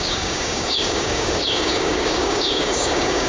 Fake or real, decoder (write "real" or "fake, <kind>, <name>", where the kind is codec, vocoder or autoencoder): fake, codec, DAC